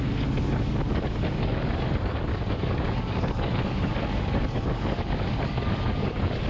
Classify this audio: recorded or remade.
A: remade